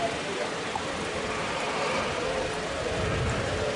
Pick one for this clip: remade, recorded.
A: remade